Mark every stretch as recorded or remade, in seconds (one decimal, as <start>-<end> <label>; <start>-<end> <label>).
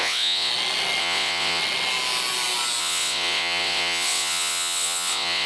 0.0-0.5 remade; 0.5-1.0 recorded; 1.0-1.6 remade; 1.6-2.8 recorded; 2.8-5.5 remade